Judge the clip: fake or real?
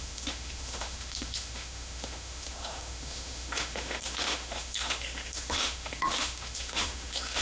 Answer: fake